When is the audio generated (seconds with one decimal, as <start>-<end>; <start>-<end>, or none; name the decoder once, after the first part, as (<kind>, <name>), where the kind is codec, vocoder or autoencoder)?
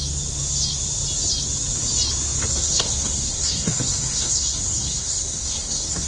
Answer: 2.5-6.1 (codec, SNAC)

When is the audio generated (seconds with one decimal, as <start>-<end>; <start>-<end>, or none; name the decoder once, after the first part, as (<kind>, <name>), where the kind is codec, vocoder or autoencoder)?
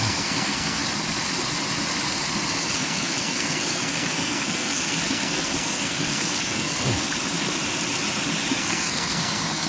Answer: 0.0-0.8 (codec, SNAC); 2.7-7.1; 8.5-9.7